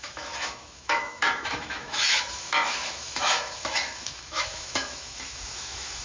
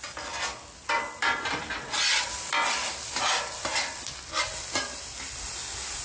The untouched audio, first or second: second